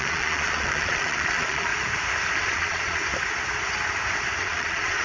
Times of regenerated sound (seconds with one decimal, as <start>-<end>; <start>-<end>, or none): 0.0-1.7; 2.4-3.0; 4.4-5.0